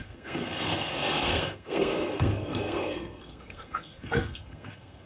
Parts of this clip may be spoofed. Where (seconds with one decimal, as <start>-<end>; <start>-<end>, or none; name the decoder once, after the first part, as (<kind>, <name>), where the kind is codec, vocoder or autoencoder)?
0.0-5.1 (codec, SNAC)